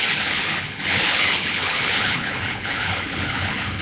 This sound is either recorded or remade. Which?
remade